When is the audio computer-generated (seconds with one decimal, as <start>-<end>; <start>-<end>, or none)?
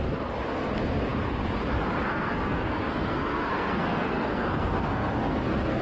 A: 2.1-5.8